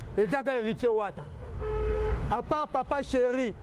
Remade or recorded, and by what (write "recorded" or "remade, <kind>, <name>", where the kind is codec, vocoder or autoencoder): remade, autoencoder, DAC-VAE